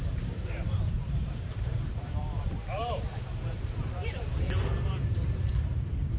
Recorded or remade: remade